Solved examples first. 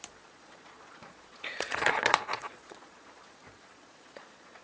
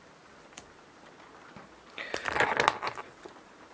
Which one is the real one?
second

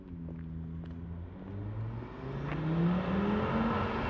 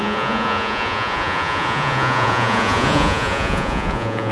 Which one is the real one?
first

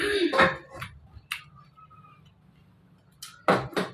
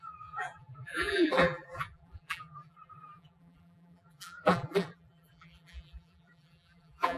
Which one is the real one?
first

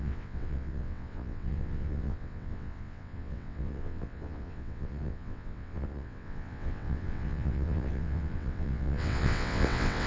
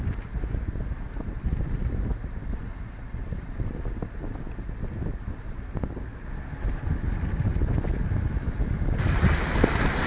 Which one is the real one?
second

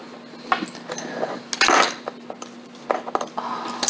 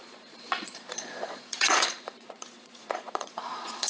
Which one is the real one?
first